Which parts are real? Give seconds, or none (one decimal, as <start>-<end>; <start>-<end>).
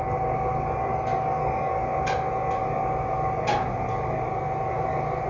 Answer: 0.0-0.9; 1.8-5.3